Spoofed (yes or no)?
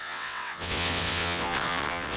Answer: yes